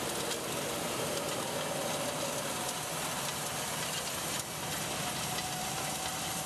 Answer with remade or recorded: recorded